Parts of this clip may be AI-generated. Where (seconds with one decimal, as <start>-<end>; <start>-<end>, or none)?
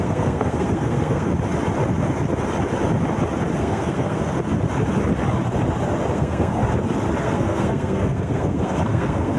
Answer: 0.0-1.3; 3.6-4.2; 6.1-6.6; 7.2-9.4